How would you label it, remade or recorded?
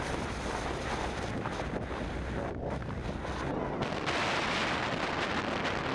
recorded